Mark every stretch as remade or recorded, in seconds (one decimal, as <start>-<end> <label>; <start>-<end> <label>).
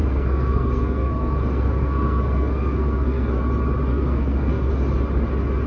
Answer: 0.0-3.4 remade; 3.4-3.9 recorded; 3.9-4.7 remade; 4.7-5.7 recorded